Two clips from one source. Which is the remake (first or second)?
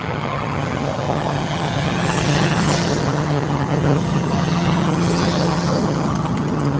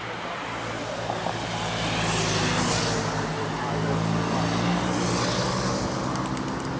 first